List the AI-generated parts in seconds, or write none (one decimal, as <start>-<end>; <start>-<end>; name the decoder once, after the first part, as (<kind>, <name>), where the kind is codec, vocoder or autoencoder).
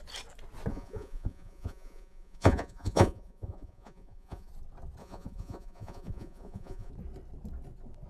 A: 0.7-4.5 (vocoder, Vocos); 5.0-6.9